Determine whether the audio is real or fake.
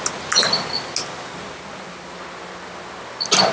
real